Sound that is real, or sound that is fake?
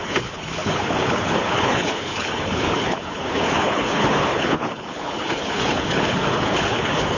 fake